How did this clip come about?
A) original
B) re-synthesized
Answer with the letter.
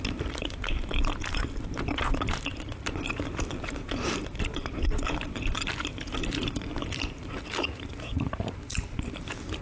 B